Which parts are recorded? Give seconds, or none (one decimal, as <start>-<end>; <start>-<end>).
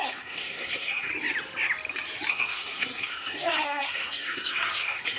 1.1-2.3